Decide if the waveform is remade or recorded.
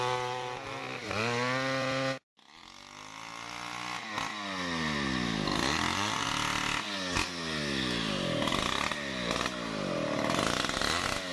recorded